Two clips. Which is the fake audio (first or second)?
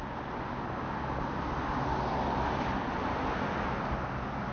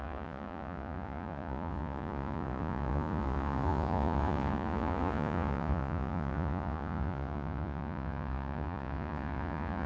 second